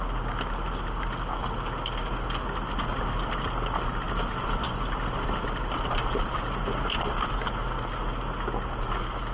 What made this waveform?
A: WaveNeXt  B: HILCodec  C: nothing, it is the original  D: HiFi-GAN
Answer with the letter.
C